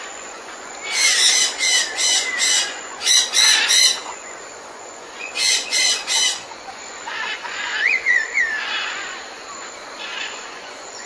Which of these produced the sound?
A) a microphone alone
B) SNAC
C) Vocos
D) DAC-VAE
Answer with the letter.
C